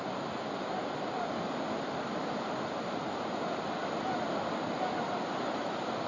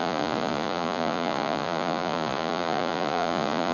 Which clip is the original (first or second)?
first